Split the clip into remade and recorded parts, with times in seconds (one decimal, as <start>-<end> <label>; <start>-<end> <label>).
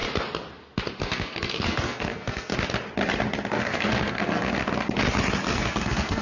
0.0-1.0 recorded; 1.0-2.5 remade; 2.5-3.5 recorded; 3.5-4.6 remade; 4.6-5.5 recorded; 5.5-6.2 remade